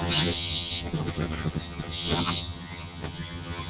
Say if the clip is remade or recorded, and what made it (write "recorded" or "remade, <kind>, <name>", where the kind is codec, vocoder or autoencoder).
remade, vocoder, HiFi-GAN